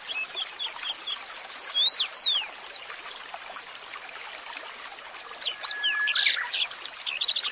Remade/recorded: recorded